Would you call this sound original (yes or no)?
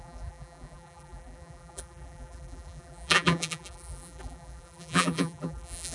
no